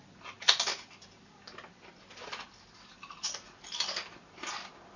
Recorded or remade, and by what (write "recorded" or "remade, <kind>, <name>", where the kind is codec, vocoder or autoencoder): recorded